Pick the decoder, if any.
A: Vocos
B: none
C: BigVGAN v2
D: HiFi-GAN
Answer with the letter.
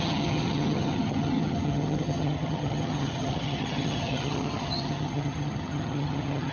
D